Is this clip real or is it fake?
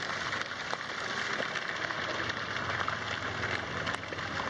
fake